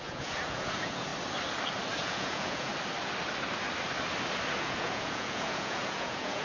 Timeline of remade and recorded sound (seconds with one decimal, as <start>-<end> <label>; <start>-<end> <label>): 0.0-1.1 remade; 1.1-2.0 recorded; 2.0-2.7 remade; 2.7-4.6 recorded; 4.6-6.4 remade